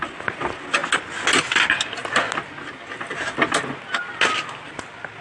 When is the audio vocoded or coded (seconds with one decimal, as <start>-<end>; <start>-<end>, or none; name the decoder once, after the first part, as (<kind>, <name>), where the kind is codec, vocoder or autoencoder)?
none